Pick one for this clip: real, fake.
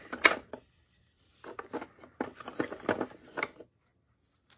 real